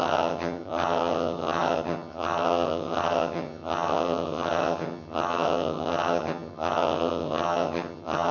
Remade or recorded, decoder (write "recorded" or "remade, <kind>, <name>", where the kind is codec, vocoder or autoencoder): remade, vocoder, HiFi-GAN